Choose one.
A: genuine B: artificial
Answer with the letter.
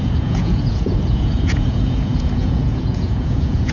B